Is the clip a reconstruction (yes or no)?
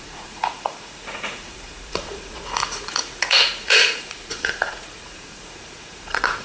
yes